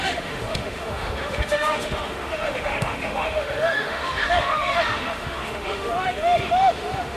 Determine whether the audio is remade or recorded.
remade